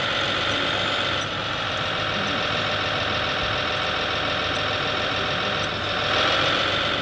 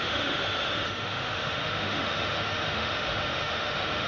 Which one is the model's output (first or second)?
second